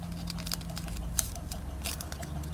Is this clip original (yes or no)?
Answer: yes